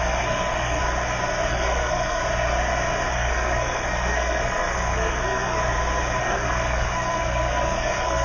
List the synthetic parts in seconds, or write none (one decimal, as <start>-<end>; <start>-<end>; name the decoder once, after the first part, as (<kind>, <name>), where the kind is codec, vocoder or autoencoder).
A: 0.0-0.8 (codec, SNAC); 1.5-2.2; 3.1-5.6; 6.2-8.2